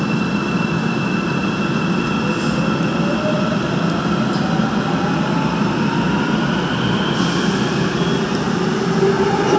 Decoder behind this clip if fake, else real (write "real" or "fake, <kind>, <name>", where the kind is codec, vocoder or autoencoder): real